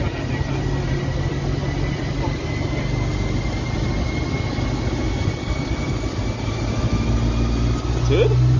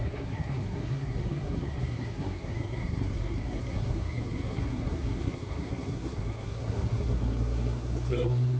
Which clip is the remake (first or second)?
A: second